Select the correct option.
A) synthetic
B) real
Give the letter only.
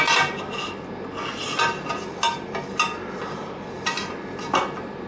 B